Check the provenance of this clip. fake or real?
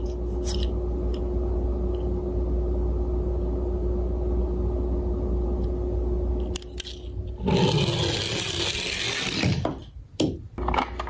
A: real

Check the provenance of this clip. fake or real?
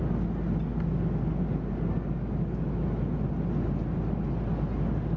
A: real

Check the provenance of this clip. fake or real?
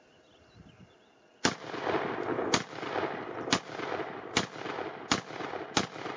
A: real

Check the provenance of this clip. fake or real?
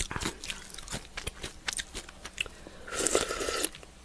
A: real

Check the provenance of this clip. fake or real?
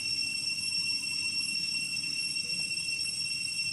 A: real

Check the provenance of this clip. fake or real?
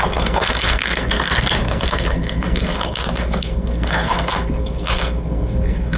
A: fake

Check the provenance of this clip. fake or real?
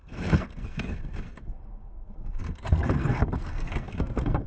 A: fake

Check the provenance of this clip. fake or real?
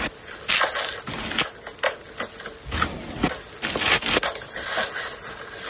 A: real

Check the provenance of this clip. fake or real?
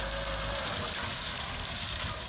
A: real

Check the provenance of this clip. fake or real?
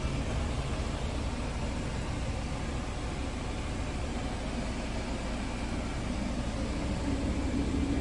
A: real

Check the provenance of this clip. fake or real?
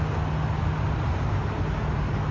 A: real